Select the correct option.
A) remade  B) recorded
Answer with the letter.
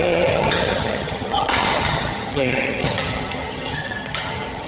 A